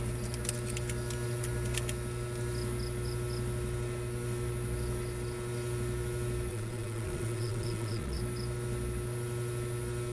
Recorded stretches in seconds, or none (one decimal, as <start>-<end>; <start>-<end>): 0.0-6.5; 8.2-10.1